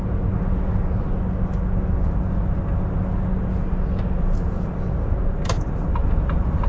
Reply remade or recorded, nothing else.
recorded